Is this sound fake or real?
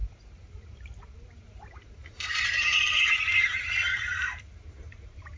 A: fake